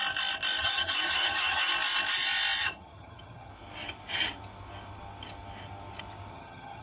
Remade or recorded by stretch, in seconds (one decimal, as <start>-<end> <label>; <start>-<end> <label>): 0.0-0.6 recorded; 0.6-1.7 remade; 1.7-2.6 recorded; 2.6-3.5 remade; 3.5-6.3 recorded; 6.3-6.8 remade